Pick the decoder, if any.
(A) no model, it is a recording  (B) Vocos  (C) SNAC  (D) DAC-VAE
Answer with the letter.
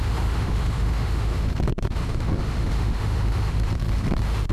D